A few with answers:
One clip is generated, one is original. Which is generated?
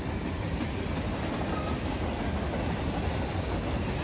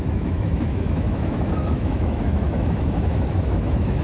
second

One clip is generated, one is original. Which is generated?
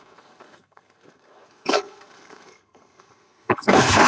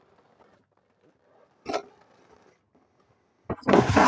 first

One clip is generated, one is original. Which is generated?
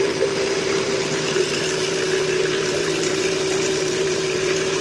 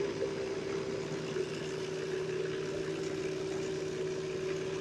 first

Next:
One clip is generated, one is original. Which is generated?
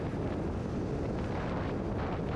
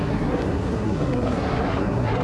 second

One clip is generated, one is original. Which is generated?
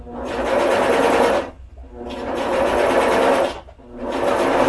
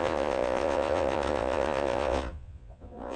second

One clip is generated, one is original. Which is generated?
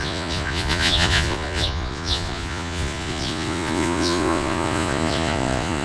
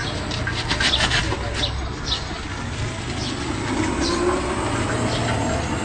first